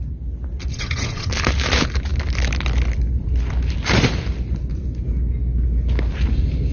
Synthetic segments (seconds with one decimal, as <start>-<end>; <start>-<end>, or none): 0.7-1.3